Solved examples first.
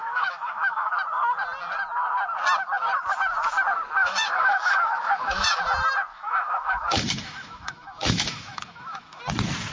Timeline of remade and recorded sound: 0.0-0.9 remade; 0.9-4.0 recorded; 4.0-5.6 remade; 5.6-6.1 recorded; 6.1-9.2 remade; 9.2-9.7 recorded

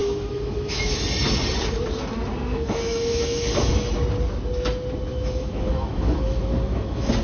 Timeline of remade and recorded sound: 0.0-1.0 remade; 1.0-2.5 recorded; 2.5-3.7 remade; 3.7-5.1 recorded; 5.1-7.2 remade

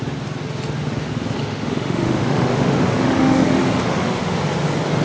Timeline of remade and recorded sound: 0.0-1.4 recorded; 1.4-4.4 remade; 4.4-5.0 recorded

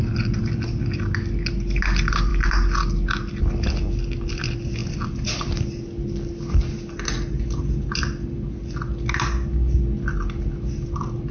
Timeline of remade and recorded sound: 0.0-11.3 recorded